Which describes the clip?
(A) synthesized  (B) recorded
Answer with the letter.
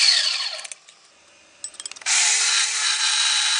B